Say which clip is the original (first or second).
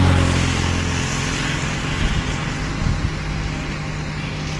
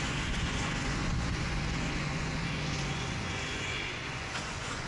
first